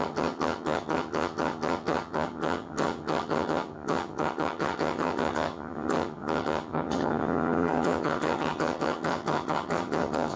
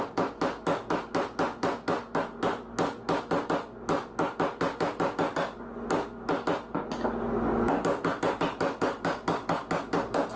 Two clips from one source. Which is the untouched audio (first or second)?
second